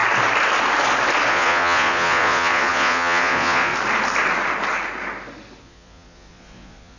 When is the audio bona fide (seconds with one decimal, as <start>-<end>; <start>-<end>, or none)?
0.0-1.3; 3.7-5.6